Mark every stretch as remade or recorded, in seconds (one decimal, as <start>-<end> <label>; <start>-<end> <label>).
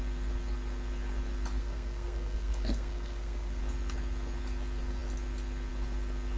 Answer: 0.0-1.6 recorded; 1.6-3.6 remade; 3.6-6.4 recorded